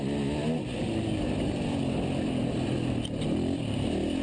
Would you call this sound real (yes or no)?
yes